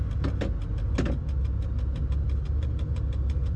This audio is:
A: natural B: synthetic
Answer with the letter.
A